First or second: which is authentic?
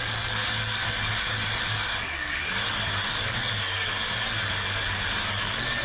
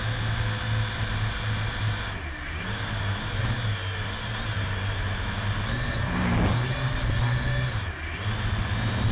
second